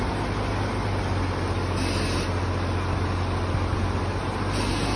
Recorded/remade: recorded